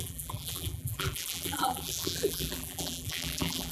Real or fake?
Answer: fake